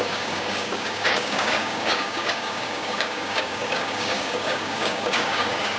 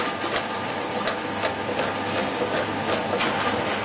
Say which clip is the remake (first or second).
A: first